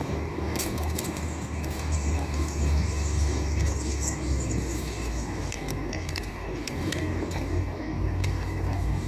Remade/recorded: remade